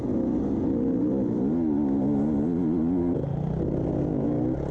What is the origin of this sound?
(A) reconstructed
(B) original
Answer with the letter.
B